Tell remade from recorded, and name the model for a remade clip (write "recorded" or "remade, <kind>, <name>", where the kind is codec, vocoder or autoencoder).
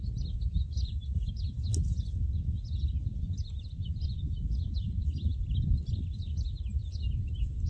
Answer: recorded